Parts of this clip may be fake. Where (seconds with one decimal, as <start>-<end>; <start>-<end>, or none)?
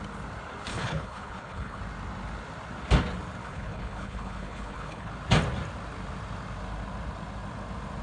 0.7-1.8; 3.4-5.1